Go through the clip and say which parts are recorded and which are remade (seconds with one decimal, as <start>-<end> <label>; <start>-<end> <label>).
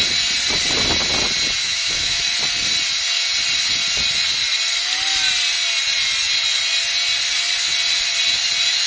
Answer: 0.0-1.6 recorded; 1.6-2.2 remade; 2.2-8.9 recorded